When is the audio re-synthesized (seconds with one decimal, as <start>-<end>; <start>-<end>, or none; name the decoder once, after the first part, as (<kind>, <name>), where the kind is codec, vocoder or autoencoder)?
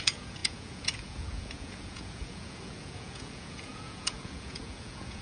0.0-5.2 (vocoder, Vocos)